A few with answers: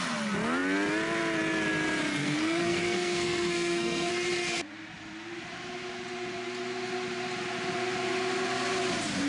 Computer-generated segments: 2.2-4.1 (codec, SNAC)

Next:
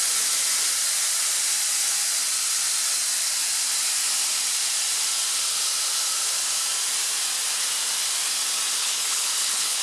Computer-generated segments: 8.8-9.8 (codec, HILCodec)

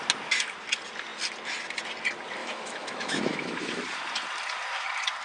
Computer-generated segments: 2.4-3.8 (autoencoder, DAC-VAE)

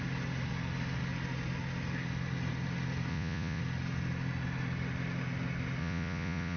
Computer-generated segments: 3.1-3.6 (vocoder, Vocos); 5.8-6.6